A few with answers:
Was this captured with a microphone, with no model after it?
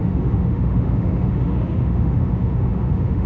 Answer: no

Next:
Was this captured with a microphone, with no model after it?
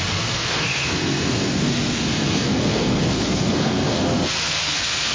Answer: no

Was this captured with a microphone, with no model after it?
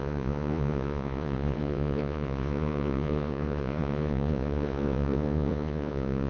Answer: no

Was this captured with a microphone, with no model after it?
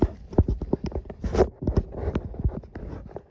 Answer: yes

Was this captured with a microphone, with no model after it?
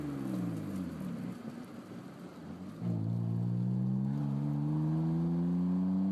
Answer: yes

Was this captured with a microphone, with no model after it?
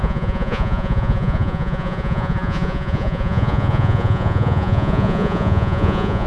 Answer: no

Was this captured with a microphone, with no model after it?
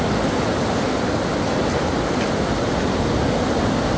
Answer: yes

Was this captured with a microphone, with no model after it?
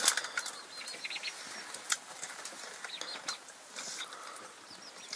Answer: yes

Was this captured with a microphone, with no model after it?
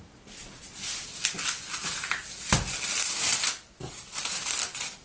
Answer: yes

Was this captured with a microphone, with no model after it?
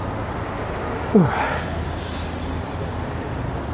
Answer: yes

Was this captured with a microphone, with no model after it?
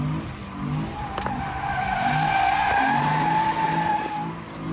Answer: yes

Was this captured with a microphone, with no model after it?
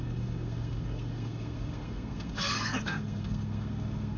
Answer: no